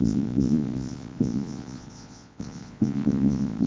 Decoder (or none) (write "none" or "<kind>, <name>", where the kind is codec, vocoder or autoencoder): vocoder, Vocos